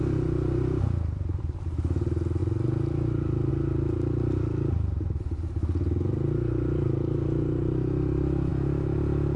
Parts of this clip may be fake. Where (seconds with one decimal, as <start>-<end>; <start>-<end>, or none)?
none